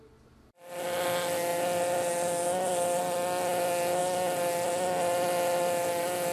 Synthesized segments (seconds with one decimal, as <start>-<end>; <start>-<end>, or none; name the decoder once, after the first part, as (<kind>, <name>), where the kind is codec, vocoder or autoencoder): none